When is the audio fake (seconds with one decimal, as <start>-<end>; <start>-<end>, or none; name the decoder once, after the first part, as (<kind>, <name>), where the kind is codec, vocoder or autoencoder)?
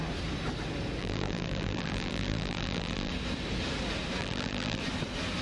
1.0-3.1 (vocoder, BigVGAN v2); 4.2-4.8